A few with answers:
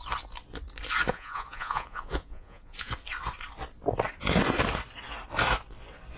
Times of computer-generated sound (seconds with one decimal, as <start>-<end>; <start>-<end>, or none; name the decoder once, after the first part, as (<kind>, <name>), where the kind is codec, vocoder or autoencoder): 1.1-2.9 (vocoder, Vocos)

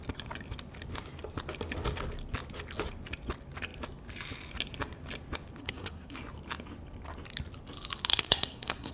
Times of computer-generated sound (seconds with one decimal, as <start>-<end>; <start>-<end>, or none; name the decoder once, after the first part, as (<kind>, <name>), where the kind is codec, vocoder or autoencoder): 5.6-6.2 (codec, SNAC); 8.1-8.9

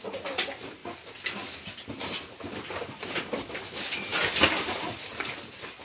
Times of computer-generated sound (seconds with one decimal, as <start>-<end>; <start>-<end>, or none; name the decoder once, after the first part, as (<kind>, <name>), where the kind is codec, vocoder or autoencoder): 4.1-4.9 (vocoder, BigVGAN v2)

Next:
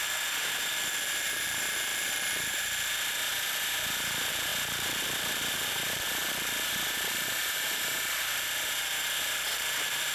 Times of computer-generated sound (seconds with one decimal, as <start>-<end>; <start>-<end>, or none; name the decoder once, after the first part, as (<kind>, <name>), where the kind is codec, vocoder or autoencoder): 0.0-10.1 (vocoder, BigVGAN v2)

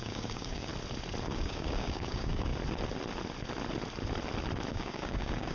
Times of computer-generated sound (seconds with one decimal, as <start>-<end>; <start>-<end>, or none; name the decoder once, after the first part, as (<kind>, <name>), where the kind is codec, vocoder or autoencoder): 0.0-0.7 (codec, DAC); 1.3-2.5; 4.7-5.5